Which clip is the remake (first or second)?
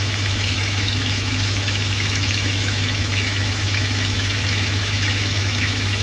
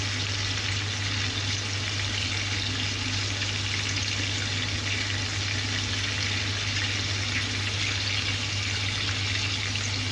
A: first